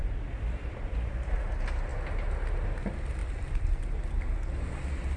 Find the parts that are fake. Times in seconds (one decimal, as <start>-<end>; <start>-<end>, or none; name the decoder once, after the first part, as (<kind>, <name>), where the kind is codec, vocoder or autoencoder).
3.2-3.8 (vocoder, BigVGAN v2)